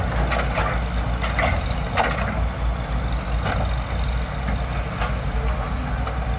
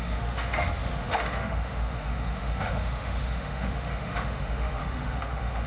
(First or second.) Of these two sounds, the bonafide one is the first